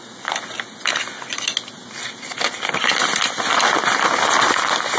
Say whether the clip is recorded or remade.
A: recorded